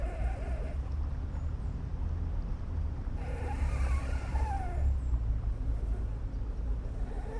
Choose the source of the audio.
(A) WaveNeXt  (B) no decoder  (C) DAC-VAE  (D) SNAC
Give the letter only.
B